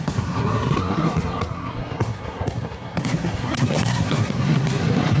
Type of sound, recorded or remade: remade